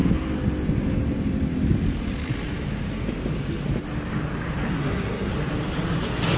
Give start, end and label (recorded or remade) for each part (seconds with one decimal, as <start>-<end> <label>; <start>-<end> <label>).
0.0-4.7 recorded; 4.7-5.3 remade; 5.3-6.4 recorded